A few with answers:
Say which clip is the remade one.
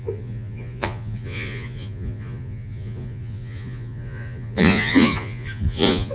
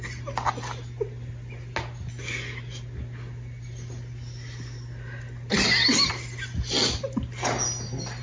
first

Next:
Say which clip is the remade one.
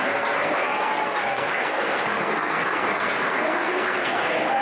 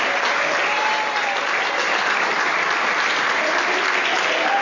first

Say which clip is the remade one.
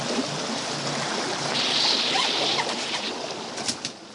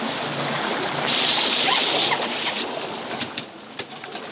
first